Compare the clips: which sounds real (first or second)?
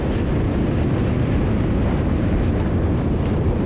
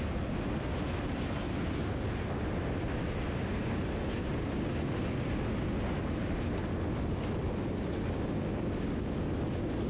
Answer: second